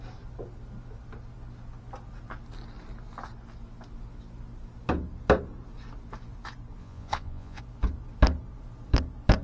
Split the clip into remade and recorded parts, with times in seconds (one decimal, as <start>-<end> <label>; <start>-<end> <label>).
0.0-6.8 recorded; 6.8-7.6 remade; 7.6-9.4 recorded